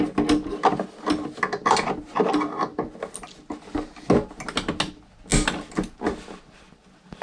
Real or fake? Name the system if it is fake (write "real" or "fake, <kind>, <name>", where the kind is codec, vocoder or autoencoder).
real